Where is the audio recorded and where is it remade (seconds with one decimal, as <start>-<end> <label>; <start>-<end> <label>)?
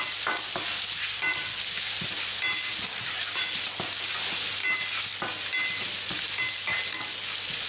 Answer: 0.0-7.7 recorded